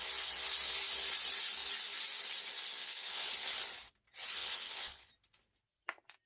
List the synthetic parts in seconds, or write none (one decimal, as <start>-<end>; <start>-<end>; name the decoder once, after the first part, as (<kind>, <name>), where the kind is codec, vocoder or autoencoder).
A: 2.8-3.3 (vocoder, WaveNeXt); 4.4-5.1